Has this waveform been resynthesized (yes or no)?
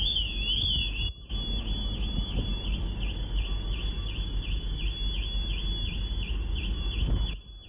no